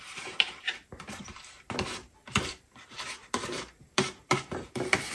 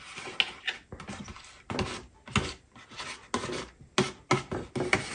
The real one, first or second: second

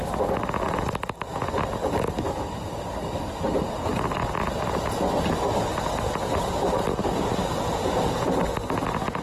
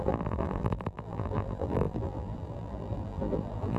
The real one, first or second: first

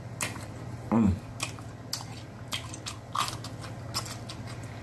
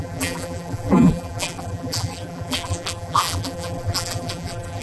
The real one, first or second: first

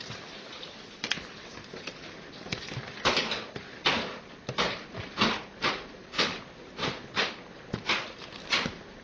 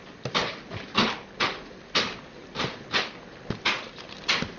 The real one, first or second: second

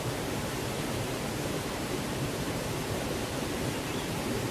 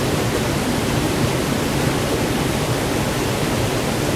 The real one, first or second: second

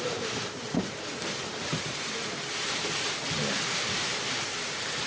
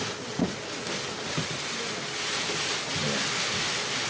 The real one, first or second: second